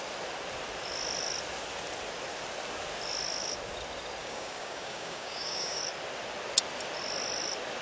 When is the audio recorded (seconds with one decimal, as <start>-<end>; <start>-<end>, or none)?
0.0-4.2; 5.8-7.8